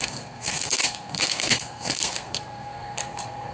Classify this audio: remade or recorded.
remade